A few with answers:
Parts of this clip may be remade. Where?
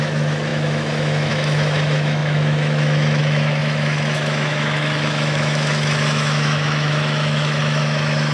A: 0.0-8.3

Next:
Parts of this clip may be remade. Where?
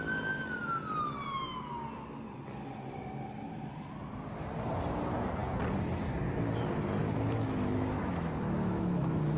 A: 7.0-9.4